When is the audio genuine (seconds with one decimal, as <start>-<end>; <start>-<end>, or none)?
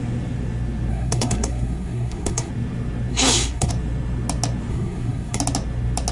0.0-0.9; 2.5-3.1; 3.7-4.7; 5.4-6.1